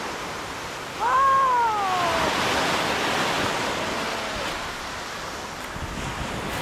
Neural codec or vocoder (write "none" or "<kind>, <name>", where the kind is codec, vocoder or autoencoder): none